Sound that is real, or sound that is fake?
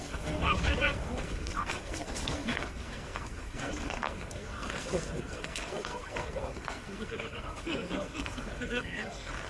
fake